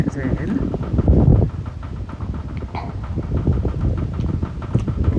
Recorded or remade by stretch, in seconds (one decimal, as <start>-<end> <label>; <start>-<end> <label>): 0.0-1.3 remade; 1.3-3.7 recorded; 3.7-5.2 remade